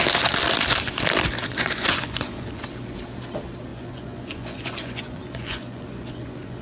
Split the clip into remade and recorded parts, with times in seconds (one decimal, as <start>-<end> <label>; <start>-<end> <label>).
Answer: 0.0-1.4 recorded; 1.4-2.6 remade; 2.6-3.7 recorded; 3.7-6.6 remade